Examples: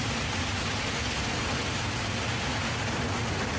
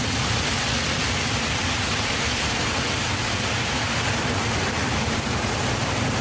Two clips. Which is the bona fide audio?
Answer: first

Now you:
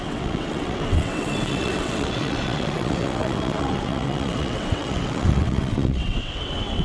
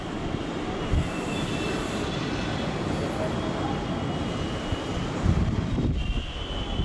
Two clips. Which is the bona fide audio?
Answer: second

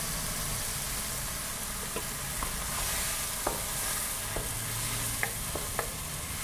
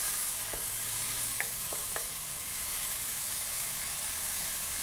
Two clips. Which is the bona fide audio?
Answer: first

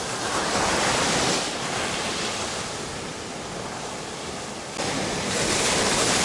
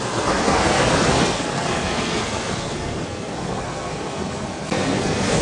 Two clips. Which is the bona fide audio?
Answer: first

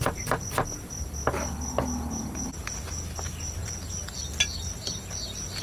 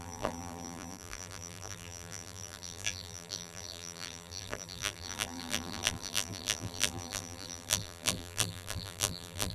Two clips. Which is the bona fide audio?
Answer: first